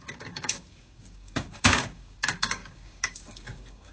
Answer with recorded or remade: remade